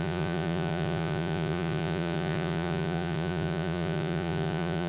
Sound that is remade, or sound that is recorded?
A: remade